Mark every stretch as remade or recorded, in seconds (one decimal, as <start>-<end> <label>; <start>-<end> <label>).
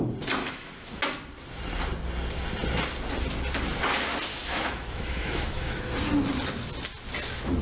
0.0-0.4 recorded; 0.4-1.0 remade; 1.0-4.3 recorded; 4.3-5.9 remade; 5.9-7.6 recorded